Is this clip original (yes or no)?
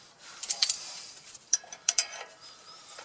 no